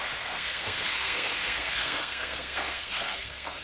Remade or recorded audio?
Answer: remade